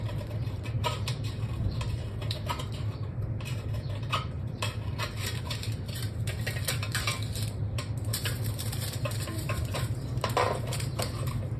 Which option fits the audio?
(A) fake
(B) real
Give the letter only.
A